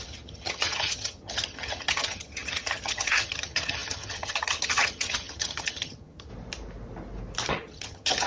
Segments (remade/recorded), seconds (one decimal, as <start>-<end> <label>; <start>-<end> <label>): 0.0-6.3 remade; 6.3-7.5 recorded; 7.5-8.3 remade